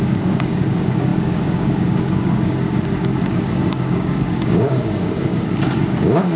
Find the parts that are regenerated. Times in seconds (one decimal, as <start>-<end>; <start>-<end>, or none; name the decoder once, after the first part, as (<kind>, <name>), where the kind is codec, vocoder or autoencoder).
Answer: 0.0-6.4 (codec, DAC)